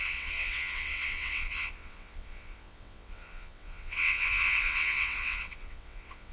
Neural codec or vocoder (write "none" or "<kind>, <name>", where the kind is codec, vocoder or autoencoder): vocoder, WaveNeXt